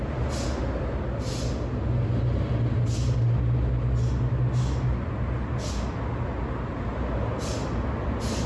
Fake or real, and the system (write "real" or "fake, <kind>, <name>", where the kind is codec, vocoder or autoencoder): real